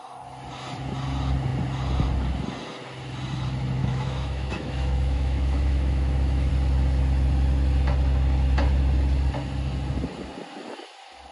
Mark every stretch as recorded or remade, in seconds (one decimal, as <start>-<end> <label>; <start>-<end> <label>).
0.0-3.8 recorded; 3.8-6.5 remade; 6.5-11.3 recorded